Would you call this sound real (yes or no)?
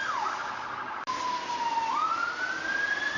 yes